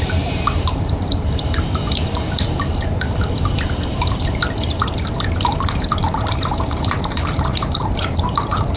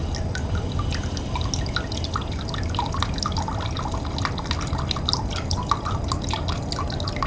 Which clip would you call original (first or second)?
second